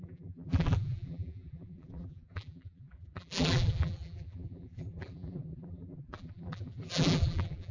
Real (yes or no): no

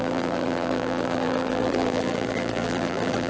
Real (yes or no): no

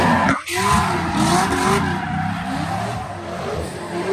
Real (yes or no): yes